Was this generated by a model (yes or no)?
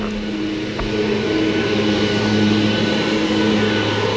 no